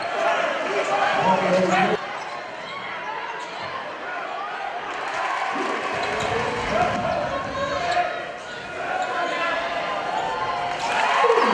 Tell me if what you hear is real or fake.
real